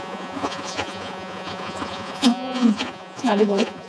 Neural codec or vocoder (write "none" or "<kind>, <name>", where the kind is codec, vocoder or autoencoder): vocoder, Vocos